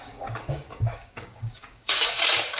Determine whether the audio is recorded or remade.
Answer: remade